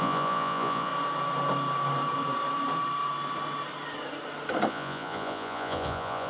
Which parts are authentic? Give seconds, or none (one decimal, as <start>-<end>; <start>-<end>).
0.9-4.7